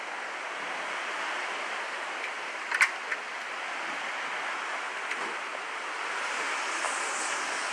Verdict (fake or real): real